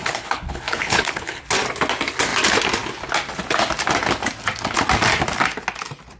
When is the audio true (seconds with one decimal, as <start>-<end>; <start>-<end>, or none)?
1.4-6.2

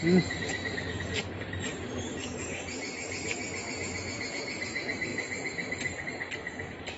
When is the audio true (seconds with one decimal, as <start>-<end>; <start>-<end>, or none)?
0.0-7.0